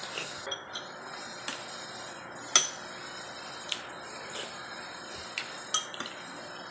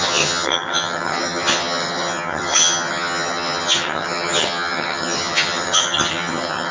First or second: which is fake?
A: second